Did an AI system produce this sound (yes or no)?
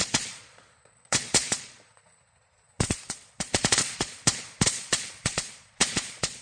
yes